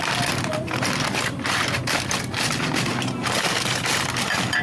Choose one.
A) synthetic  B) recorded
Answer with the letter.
B